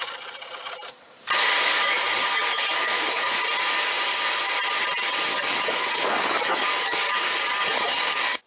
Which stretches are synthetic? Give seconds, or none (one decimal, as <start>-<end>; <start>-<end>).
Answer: 1.7-3.3; 5.3-8.5